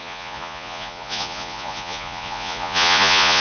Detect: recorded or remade remade